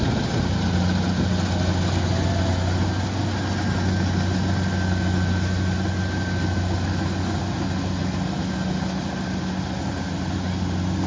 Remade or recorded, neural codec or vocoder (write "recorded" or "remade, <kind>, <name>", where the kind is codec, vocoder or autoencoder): recorded